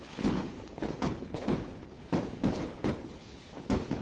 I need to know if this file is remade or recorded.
remade